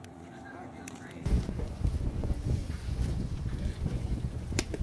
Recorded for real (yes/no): no